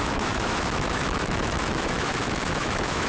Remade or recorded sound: remade